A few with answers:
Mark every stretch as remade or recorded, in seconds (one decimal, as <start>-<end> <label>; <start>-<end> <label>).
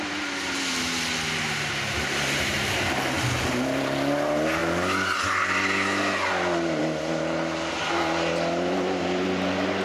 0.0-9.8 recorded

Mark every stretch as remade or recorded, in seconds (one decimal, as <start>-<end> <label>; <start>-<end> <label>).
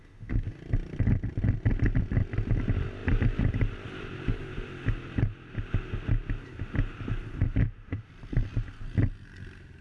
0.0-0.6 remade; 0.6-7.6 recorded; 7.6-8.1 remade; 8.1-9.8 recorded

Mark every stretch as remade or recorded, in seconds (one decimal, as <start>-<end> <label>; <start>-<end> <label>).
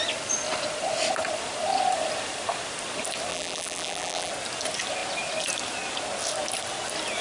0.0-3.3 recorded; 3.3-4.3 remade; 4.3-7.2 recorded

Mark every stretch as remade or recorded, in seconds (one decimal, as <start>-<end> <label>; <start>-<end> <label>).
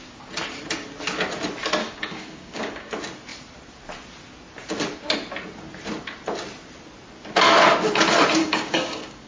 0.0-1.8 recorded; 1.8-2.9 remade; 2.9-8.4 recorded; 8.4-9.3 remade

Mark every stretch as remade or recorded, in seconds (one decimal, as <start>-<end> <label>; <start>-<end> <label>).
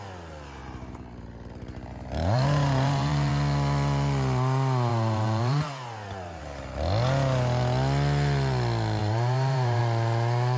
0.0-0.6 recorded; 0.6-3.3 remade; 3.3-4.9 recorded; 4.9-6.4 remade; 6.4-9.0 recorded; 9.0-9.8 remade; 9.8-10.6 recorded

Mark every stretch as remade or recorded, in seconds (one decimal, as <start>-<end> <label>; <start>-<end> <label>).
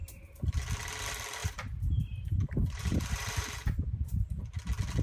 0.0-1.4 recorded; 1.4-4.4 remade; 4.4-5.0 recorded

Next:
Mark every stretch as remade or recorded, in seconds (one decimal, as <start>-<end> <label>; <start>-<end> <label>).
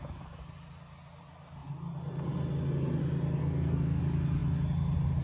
0.0-3.4 recorded; 3.4-4.0 remade; 4.0-5.2 recorded